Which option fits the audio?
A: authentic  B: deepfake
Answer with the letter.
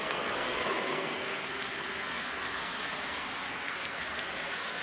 B